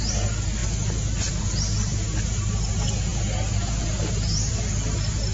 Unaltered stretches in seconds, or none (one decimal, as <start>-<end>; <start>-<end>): 0.0-5.3